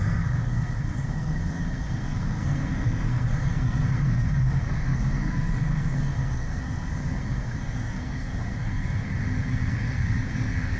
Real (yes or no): no